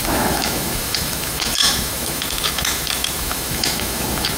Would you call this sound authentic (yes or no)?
no